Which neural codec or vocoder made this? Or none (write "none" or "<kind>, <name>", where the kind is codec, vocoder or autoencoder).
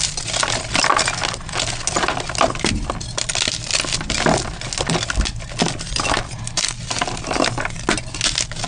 none